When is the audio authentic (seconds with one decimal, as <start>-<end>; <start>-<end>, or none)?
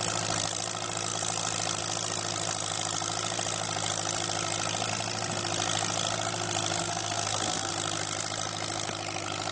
0.0-6.8; 7.7-9.5